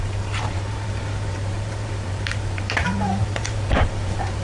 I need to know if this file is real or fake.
fake